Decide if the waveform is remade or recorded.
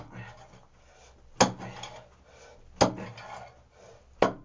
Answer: recorded